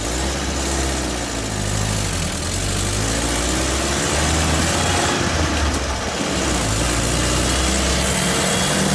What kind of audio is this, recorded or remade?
recorded